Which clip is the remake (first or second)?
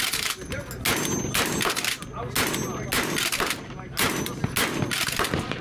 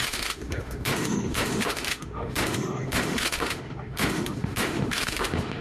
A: second